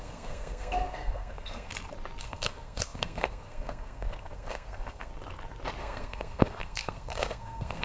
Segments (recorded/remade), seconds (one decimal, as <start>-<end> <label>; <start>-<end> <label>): 0.0-1.7 remade; 1.7-2.2 recorded; 2.2-5.1 remade; 5.1-5.8 recorded; 5.8-7.8 remade